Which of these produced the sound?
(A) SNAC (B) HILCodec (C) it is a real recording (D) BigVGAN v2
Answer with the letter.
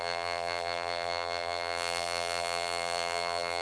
D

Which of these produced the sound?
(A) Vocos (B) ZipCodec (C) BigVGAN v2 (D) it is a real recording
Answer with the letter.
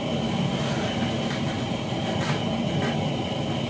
D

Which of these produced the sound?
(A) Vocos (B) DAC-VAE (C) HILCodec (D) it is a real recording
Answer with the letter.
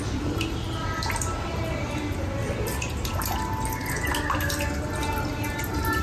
D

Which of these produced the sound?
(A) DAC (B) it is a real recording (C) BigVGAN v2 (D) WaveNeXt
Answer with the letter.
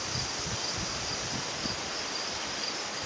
B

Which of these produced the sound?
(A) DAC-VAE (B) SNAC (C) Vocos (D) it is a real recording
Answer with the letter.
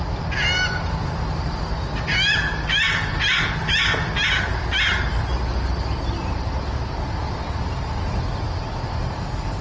D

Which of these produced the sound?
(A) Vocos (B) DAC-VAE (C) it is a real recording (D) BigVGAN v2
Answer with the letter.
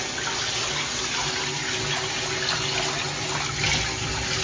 C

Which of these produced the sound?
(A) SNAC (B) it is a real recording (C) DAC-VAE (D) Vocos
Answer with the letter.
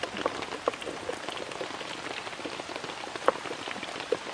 B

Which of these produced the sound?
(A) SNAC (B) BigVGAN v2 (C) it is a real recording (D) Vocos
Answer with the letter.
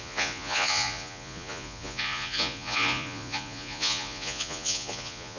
D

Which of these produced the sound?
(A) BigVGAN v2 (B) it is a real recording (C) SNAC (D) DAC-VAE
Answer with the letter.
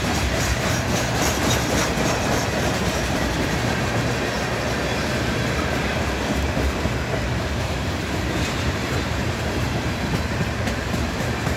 A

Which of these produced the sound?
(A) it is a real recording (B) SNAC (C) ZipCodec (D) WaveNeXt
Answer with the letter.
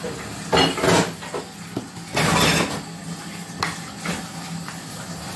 A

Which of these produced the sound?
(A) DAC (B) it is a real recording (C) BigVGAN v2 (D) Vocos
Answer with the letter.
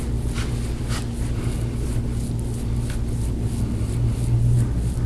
B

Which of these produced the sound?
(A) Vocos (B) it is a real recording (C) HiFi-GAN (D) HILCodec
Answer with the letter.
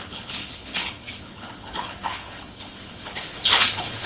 D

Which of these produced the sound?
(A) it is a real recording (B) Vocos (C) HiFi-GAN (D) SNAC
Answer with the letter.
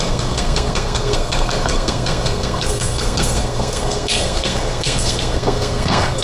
D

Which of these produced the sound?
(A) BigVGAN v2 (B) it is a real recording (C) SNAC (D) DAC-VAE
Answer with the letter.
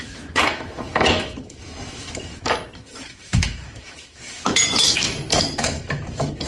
D